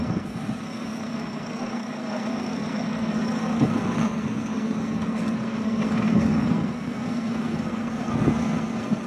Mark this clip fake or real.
fake